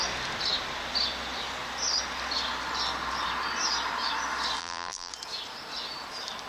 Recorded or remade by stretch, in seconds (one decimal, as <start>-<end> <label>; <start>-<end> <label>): 0.0-4.6 recorded; 4.6-5.1 remade; 5.1-6.5 recorded